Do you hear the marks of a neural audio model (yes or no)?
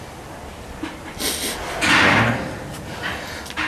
no